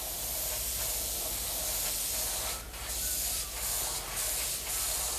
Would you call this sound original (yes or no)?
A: yes